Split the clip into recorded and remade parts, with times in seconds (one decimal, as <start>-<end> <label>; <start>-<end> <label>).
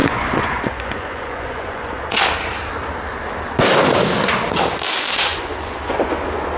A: 0.0-2.0 remade; 2.0-5.3 recorded; 5.3-6.1 remade; 6.1-6.6 recorded